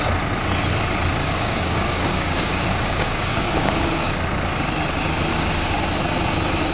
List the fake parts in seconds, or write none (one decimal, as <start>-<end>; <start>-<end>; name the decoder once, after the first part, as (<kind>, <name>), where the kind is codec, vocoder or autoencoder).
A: 1.2-4.1 (codec, DAC); 5.3-5.8